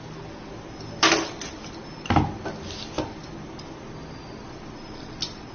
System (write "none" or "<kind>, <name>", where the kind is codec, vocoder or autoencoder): none